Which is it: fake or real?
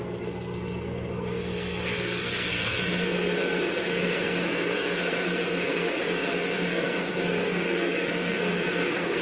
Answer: fake